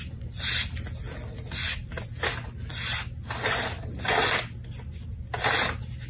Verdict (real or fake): real